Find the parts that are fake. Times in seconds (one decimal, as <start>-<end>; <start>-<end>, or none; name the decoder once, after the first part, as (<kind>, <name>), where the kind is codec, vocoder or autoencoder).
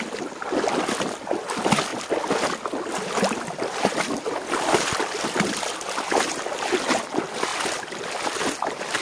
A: none